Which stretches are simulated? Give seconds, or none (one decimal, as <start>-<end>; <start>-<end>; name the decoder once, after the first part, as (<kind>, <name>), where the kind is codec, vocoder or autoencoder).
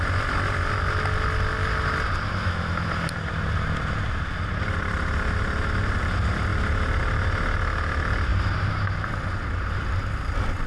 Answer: none